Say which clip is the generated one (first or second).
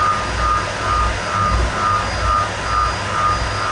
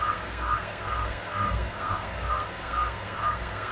second